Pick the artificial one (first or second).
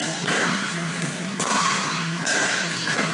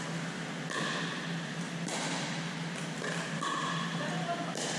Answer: first